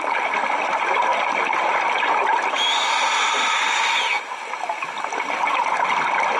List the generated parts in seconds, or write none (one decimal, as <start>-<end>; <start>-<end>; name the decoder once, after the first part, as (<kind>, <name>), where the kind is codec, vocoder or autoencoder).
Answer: none